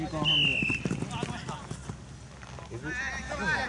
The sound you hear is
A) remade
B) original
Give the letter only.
B